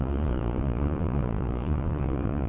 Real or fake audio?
fake